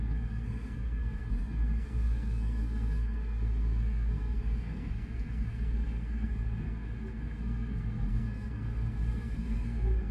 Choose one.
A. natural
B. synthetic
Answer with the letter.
B